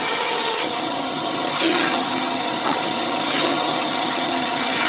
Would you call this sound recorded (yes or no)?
no